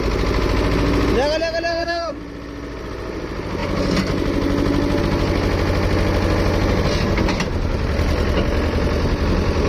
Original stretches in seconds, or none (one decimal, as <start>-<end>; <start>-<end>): 0.0-1.7; 2.2-9.7